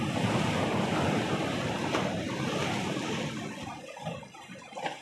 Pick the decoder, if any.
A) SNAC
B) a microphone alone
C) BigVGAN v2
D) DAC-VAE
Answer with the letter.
B